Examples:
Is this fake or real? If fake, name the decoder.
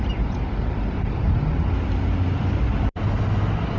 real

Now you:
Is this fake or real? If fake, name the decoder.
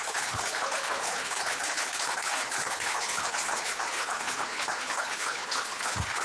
fake, codec, HILCodec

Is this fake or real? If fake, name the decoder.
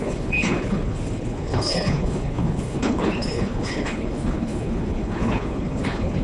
fake, codec, HILCodec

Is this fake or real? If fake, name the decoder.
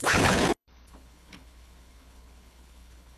fake, codec, HILCodec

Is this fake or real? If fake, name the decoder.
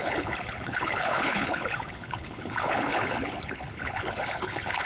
fake, codec, HILCodec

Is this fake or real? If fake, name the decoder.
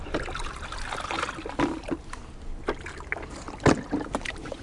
real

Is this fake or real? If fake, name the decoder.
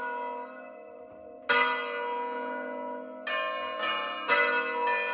real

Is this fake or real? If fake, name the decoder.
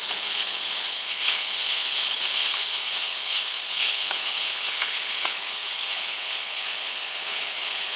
fake, codec, HILCodec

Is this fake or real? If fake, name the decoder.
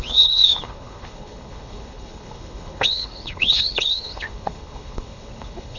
fake, codec, HILCodec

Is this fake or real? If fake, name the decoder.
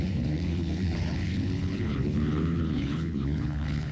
fake, codec, HILCodec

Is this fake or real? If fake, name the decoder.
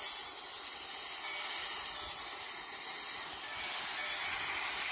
real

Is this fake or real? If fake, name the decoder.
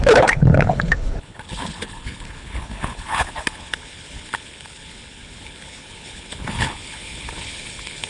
fake, codec, HILCodec